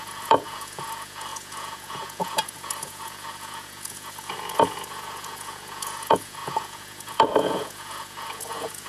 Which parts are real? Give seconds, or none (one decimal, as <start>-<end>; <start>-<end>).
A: none